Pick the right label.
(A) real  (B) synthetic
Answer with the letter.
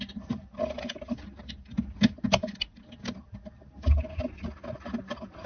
A